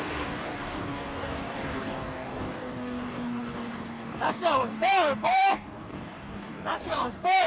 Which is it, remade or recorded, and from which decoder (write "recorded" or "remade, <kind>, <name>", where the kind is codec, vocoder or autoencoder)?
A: remade, codec, DAC